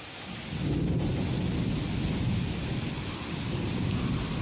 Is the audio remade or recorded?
recorded